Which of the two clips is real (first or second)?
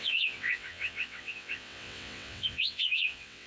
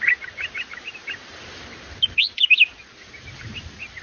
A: second